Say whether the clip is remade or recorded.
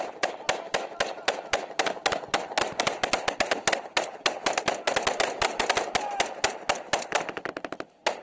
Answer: recorded